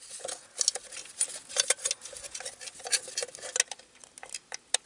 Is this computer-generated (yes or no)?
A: no